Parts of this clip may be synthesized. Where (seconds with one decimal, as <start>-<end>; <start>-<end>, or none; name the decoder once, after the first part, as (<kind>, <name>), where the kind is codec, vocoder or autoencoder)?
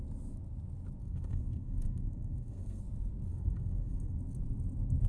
1.0-2.8 (codec, SNAC); 3.3-4.2